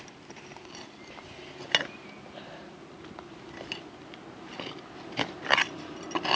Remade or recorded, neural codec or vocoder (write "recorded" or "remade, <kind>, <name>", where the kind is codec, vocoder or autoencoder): recorded